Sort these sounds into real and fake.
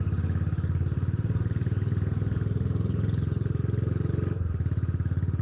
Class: real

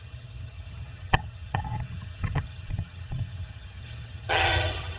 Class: fake